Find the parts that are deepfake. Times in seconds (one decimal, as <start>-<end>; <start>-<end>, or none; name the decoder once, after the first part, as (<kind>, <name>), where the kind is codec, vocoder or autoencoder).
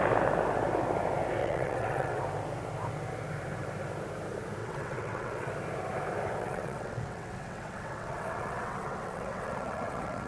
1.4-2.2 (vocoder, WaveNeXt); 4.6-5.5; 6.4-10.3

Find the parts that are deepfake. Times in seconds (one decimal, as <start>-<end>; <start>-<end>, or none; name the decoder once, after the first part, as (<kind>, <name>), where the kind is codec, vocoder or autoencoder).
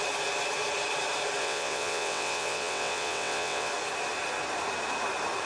1.4-3.7 (vocoder, WaveNeXt)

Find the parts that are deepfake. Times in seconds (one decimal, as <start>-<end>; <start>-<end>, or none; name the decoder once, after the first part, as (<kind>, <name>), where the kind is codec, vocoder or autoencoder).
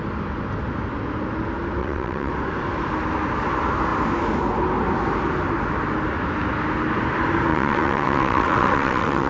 1.8-2.3 (vocoder, WaveNeXt); 7.5-9.3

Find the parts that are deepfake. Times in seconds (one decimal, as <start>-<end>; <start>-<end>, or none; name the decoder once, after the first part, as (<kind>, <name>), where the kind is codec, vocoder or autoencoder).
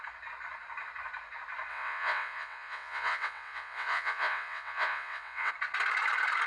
1.7-5.5 (vocoder, WaveNeXt)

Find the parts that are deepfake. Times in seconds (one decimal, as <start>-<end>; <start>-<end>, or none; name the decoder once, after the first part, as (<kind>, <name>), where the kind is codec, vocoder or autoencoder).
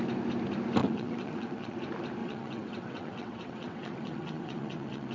0.8-1.8 (vocoder, WaveNeXt); 2.2-5.1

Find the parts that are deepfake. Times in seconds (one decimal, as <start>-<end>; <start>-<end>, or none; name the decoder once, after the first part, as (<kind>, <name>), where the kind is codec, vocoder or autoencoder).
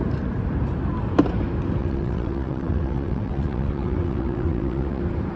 1.8-5.0 (vocoder, WaveNeXt)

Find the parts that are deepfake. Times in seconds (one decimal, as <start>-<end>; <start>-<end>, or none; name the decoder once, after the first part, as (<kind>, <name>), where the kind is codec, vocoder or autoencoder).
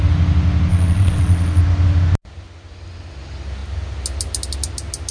0.7-1.6 (vocoder, WaveNeXt)